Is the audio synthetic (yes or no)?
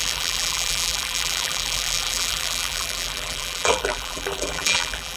yes